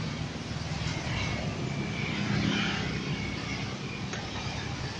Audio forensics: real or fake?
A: real